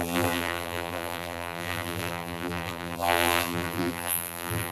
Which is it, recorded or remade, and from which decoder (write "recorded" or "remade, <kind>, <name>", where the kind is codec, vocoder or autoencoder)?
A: remade, vocoder, BigVGAN v2